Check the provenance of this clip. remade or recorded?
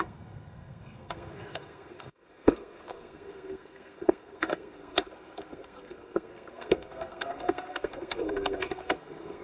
remade